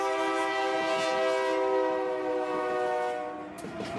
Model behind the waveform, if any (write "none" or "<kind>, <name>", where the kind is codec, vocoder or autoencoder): none